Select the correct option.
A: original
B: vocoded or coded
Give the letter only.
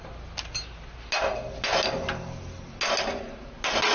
A